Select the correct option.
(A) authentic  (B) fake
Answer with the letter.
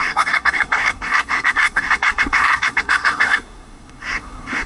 B